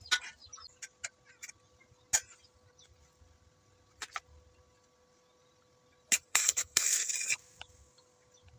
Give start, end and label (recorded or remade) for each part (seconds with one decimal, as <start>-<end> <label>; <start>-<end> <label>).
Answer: 0.0-6.3 recorded; 6.3-7.1 remade; 7.1-8.6 recorded